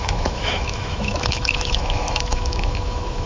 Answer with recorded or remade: remade